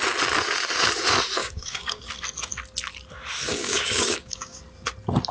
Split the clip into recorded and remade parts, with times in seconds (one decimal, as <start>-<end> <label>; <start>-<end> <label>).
0.0-1.4 recorded; 1.4-2.0 remade; 2.0-3.5 recorded; 3.5-4.6 remade; 4.6-5.3 recorded